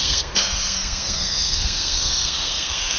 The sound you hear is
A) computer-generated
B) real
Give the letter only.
A